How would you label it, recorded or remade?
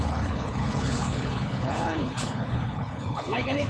remade